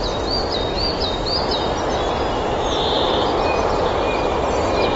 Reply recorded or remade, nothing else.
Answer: recorded